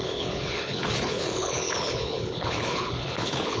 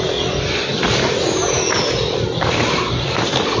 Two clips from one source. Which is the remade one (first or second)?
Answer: first